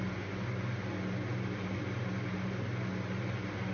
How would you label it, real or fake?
real